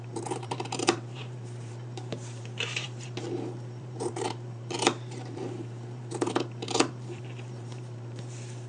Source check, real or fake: fake